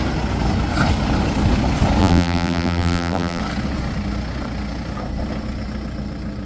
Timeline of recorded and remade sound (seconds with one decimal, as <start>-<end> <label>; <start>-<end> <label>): 0.0-2.0 recorded; 2.0-3.4 remade; 3.4-6.5 recorded